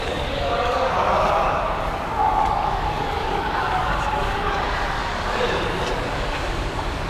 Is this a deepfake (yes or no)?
yes